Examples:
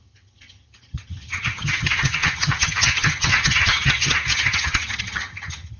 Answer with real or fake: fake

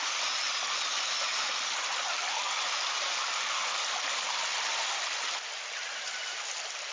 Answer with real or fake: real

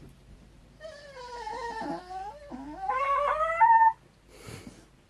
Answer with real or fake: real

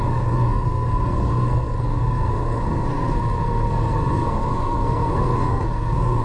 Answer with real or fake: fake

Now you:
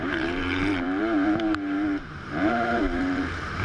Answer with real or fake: fake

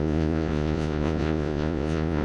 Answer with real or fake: fake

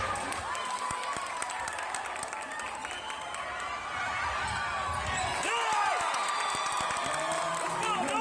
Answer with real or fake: real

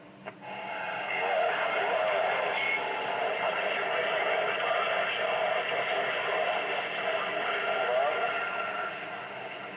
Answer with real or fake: real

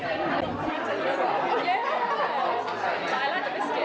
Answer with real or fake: real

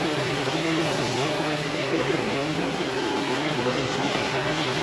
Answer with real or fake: fake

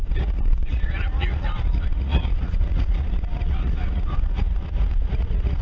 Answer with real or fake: fake